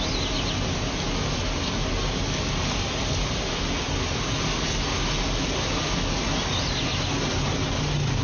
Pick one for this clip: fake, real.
real